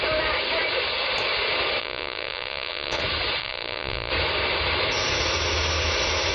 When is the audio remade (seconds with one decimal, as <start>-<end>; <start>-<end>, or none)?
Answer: 1.8-3.0; 3.4-4.1

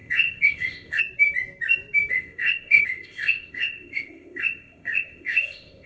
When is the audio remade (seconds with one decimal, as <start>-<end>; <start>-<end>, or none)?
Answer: 0.0-1.0; 2.1-5.9